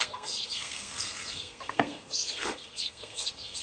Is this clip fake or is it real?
fake